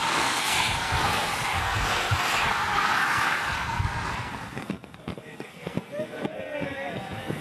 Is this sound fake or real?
fake